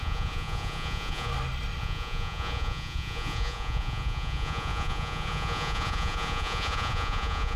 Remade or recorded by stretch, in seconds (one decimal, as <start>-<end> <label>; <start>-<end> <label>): 0.0-1.3 remade; 1.3-1.8 recorded; 1.8-7.6 remade